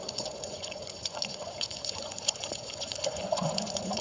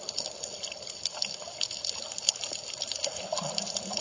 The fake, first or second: first